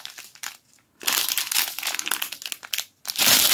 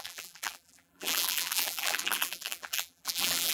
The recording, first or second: first